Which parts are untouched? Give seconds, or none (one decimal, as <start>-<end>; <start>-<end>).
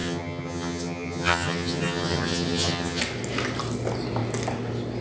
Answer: 3.0-5.0